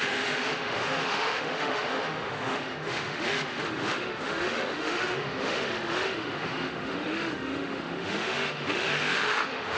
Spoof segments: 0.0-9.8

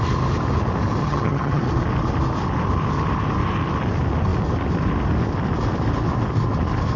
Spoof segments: 1.0-1.6